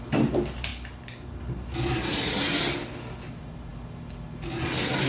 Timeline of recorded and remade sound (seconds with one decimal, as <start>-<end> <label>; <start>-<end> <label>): 0.0-5.1 recorded